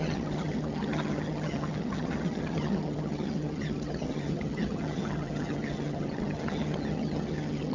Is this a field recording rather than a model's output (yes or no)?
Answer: no